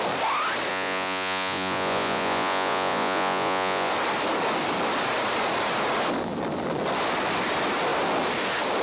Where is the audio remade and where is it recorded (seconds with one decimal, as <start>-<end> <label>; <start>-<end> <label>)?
0.0-0.7 recorded; 0.7-3.9 remade; 3.9-8.8 recorded